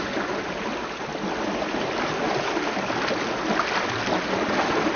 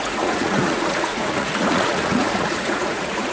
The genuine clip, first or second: first